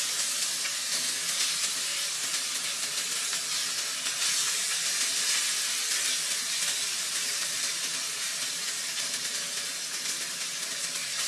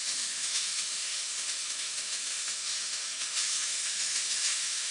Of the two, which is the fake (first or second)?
second